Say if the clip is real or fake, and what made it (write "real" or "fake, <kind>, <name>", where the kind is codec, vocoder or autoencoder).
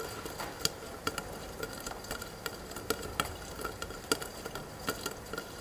real